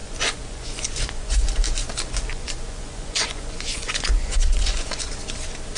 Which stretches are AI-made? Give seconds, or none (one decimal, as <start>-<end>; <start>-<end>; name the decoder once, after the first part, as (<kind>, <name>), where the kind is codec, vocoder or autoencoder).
0.0-1.5 (vocoder, Vocos); 2.3-5.1